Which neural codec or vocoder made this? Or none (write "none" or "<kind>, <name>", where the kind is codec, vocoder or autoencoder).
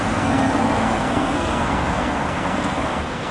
codec, SNAC